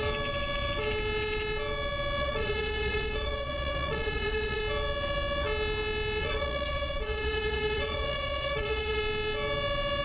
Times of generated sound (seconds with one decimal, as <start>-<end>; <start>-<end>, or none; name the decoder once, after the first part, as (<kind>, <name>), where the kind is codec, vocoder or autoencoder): 2.2-4.6 (vocoder, Vocos); 6.2-9.0